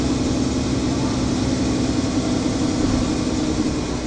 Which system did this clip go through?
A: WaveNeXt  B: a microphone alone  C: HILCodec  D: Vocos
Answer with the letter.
B